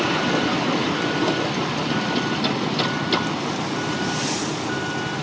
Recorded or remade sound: recorded